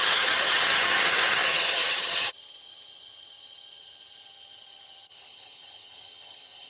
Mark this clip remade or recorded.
remade